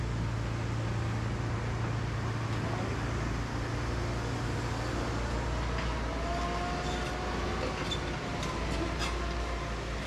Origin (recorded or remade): recorded